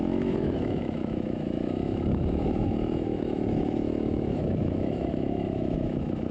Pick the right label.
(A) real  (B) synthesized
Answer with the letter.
B